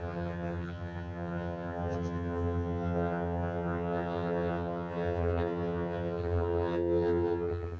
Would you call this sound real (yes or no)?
no